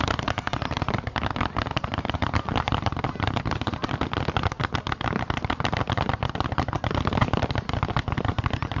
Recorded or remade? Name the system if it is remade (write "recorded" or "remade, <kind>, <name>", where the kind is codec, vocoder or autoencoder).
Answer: recorded